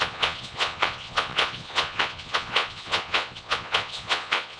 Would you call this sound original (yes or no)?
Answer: no